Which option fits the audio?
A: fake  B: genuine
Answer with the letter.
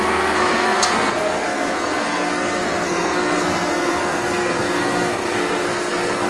A